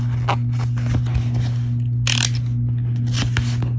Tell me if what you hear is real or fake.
real